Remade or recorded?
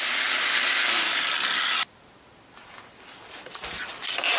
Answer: recorded